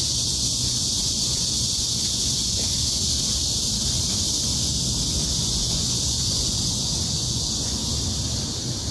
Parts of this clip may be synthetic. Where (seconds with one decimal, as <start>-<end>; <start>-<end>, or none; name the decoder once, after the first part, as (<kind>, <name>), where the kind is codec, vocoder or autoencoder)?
0.0-3.0 (vocoder, Vocos); 5.4-7.8